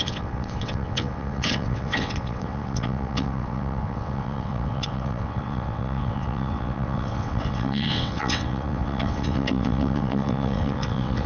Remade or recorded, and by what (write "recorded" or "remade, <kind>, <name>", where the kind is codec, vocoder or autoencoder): remade, vocoder, WaveNeXt